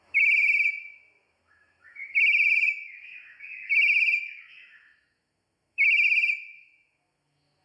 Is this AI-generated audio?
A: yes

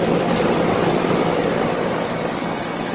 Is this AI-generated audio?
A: no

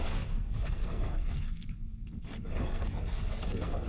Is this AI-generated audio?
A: yes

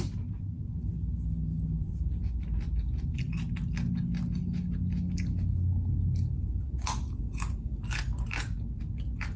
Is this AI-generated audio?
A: no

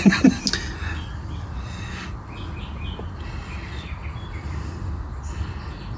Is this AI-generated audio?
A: no